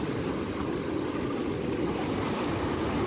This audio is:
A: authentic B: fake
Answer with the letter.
A